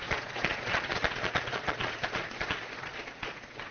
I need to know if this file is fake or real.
fake